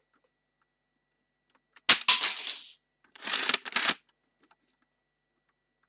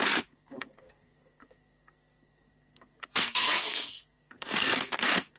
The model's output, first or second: second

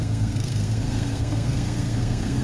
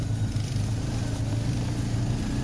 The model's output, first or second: first